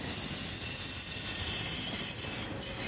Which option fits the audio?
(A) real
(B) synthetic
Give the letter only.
A